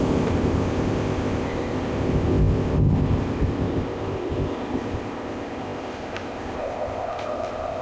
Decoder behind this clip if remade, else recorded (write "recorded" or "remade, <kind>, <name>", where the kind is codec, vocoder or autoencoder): remade, codec, ZipCodec